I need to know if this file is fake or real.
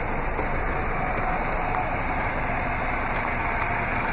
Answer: real